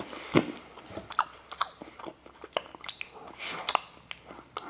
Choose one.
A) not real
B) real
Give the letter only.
B